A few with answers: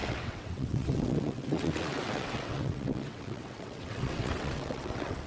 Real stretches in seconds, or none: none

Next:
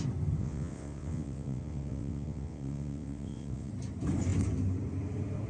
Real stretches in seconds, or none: 0.0-0.4; 3.7-5.5

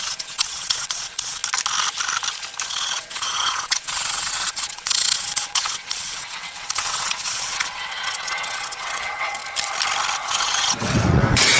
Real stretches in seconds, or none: 1.4-2.6; 9.4-10.3

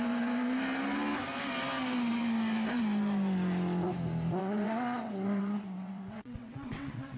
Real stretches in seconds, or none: 0.0-4.4

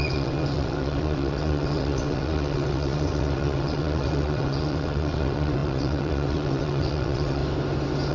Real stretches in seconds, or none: 7.4-8.1